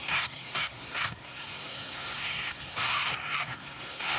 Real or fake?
fake